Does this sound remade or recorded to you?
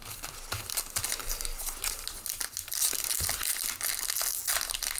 recorded